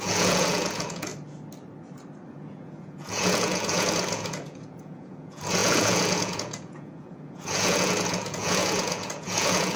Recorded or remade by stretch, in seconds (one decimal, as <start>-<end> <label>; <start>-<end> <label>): 0.0-1.1 remade; 1.1-2.3 recorded; 2.3-9.8 remade